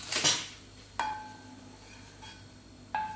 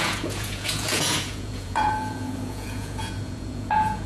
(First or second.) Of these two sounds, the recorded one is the first